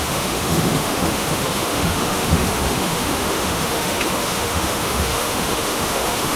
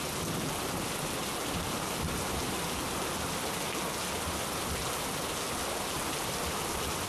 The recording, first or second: second